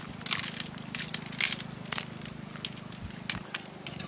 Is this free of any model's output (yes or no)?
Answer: yes